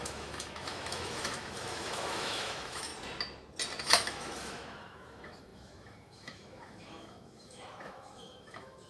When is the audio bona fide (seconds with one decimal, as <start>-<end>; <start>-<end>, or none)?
2.9-3.8